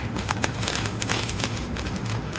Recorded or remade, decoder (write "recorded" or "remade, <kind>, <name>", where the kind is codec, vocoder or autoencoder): remade, autoencoder, DAC-VAE